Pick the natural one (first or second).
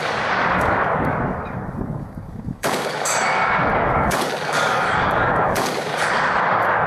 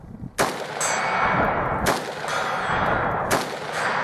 second